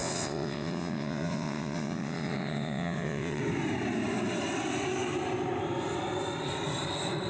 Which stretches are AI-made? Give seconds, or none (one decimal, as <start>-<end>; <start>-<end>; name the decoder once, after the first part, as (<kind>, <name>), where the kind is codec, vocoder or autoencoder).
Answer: 0.0-3.4 (vocoder, WaveNeXt)